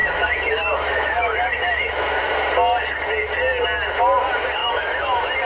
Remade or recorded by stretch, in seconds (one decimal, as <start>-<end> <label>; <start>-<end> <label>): 0.0-2.2 remade; 2.2-4.6 recorded; 4.6-5.4 remade